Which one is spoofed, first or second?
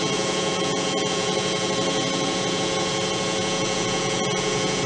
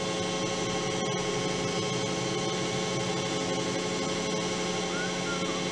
first